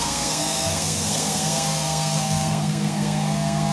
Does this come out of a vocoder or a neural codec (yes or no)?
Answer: yes